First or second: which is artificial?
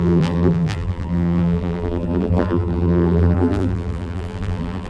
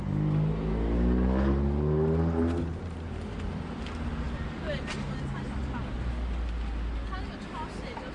first